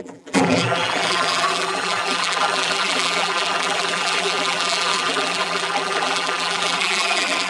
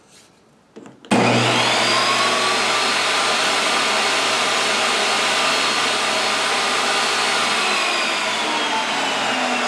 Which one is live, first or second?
second